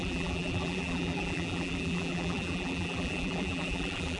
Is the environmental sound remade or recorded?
remade